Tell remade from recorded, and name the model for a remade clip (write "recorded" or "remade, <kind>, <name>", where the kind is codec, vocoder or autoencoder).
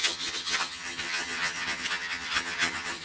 remade, vocoder, HiFi-GAN